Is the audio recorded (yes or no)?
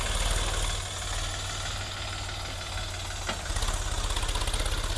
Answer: yes